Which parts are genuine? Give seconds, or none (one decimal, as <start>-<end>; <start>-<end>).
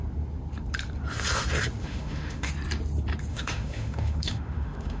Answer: 0.0-1.8; 2.5-3.3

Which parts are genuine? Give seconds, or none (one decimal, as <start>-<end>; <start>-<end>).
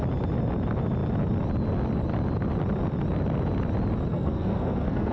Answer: 0.0-4.1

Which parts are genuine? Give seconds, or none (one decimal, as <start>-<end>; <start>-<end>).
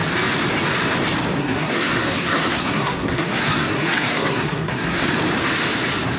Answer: 0.0-1.4; 5.1-6.2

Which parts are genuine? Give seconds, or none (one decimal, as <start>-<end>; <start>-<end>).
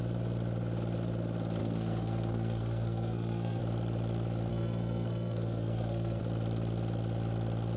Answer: 0.0-1.6; 3.6-4.5; 6.2-7.8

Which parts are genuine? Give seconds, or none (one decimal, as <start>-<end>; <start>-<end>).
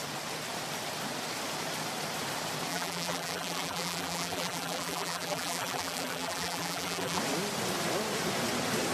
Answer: 0.0-2.7; 7.2-8.9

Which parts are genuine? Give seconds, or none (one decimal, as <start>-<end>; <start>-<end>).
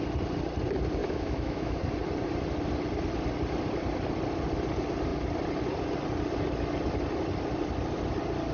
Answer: 0.0-1.0; 1.8-8.5